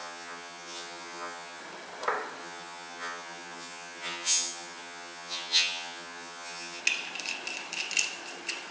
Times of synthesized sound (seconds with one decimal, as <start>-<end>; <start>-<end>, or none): 0.0-1.6; 2.4-6.8